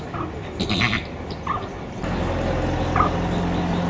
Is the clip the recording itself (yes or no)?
yes